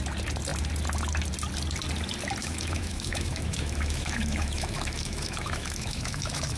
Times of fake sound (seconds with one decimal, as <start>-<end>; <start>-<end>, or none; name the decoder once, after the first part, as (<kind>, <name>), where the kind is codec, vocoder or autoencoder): 2.4-6.6 (autoencoder, DAC-VAE)